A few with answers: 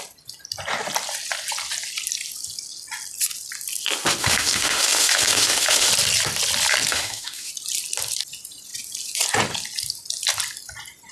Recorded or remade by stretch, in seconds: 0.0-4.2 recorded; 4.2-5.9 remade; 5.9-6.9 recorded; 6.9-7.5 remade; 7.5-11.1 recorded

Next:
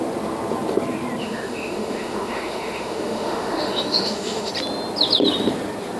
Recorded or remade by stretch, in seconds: 0.0-1.2 recorded; 1.2-4.5 remade; 4.5-6.0 recorded

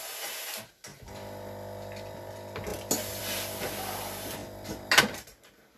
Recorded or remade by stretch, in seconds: 0.0-5.8 recorded

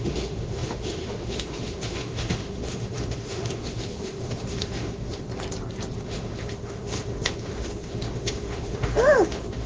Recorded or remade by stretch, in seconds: 0.0-5.3 remade; 5.3-6.0 recorded; 6.0-9.7 remade

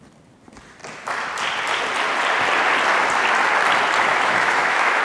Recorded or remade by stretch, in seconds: 0.0-4.1 recorded; 4.1-5.0 remade